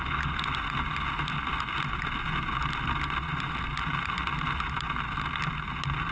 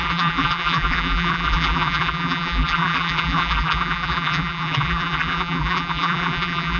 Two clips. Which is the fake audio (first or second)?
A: second